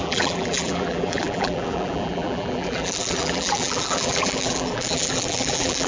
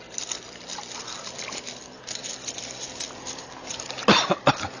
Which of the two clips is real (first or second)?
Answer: second